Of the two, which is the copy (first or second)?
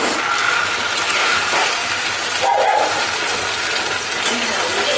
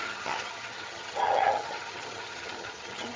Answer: second